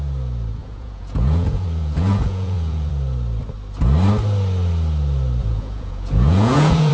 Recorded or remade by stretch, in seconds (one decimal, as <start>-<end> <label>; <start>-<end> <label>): 0.0-0.6 recorded; 0.6-2.9 remade; 2.9-5.4 recorded; 5.4-6.9 remade